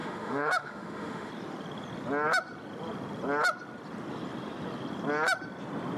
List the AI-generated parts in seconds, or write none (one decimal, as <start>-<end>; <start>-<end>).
0.0-1.3